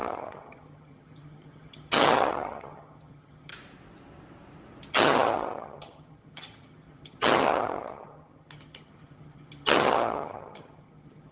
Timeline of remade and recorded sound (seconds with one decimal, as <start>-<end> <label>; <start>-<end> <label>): 0.0-3.5 remade; 3.5-4.9 recorded; 4.9-11.3 remade